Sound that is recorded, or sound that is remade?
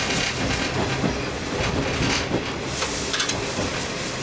recorded